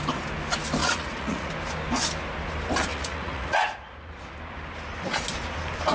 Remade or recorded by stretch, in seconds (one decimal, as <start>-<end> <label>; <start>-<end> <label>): 0.0-0.8 recorded; 0.8-1.5 remade; 1.5-2.9 recorded; 2.9-4.1 remade; 4.1-5.9 recorded